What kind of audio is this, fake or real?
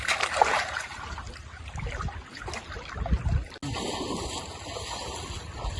real